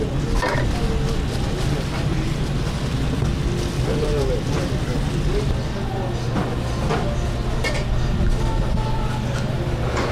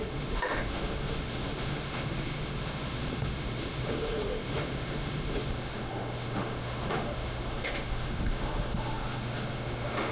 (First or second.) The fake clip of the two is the second